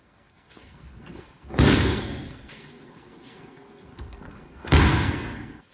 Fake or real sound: fake